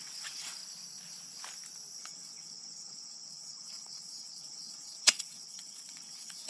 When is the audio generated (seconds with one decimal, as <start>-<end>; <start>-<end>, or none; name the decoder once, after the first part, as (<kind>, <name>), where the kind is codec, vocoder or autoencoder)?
0.0-0.6 (vocoder, WaveNeXt); 2.0-6.5